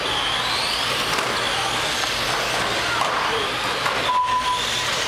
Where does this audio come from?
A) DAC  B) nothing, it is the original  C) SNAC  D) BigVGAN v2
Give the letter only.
B